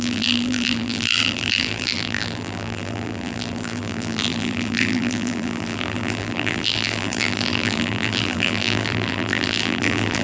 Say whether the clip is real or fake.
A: fake